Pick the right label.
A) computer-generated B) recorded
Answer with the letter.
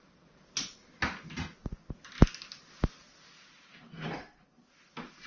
B